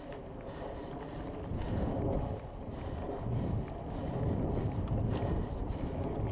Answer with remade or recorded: recorded